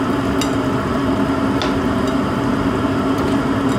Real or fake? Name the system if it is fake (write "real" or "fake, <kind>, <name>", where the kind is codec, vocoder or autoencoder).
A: real